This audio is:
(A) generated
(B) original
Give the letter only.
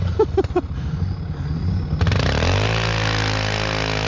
B